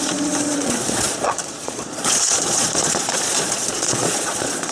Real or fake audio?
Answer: fake